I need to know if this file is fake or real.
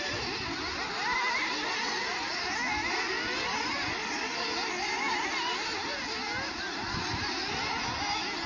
real